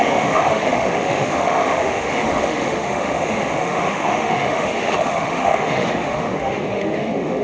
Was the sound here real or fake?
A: fake